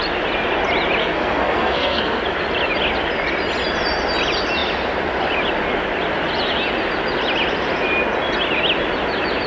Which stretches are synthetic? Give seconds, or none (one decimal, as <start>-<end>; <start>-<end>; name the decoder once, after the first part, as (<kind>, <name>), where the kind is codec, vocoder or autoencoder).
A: 1.0-2.2 (codec, SNAC)

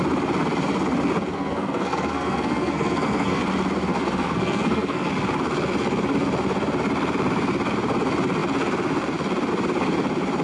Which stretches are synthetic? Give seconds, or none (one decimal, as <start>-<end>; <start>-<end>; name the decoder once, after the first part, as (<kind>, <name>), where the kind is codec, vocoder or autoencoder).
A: 1.3-3.4 (codec, SNAC); 3.9-5.1

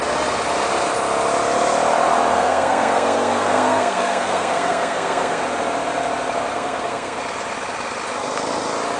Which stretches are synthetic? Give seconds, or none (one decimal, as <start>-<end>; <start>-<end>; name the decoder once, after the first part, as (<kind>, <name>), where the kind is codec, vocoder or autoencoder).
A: 2.3-5.4 (codec, SNAC); 6.5-7.2

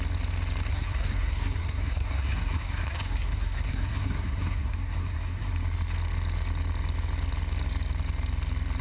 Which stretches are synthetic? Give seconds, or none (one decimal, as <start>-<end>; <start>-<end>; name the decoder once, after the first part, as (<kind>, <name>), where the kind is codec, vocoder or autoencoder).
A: 0.7-5.5 (codec, SNAC)

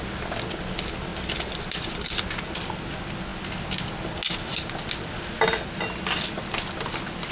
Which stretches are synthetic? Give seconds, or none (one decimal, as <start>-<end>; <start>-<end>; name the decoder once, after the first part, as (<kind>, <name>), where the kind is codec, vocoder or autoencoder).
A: none

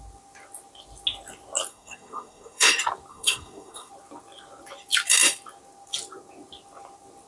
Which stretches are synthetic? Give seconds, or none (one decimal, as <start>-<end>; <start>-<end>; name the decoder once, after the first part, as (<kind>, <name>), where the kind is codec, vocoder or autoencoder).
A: 1.7-2.7 (codec, SNAC); 3.1-3.9

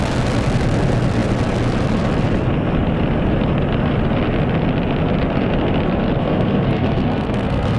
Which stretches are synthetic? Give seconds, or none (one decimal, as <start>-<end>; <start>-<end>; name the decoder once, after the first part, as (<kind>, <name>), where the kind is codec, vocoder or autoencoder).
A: 6.2-7.8 (codec, SNAC)

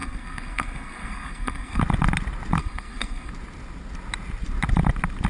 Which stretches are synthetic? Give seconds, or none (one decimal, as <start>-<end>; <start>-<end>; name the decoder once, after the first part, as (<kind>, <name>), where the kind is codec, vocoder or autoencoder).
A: 0.0-1.8 (codec, SNAC); 2.6-3.3